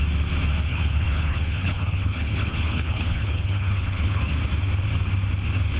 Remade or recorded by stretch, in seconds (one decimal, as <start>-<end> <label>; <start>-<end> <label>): 0.0-0.7 recorded; 0.7-4.2 remade; 4.2-5.8 recorded